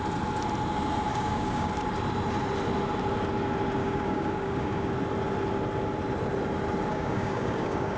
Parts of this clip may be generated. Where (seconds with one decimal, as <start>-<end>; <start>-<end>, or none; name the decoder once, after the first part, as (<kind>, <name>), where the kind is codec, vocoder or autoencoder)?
1.1-1.7 (codec, DAC); 3.8-4.9; 6.9-8.0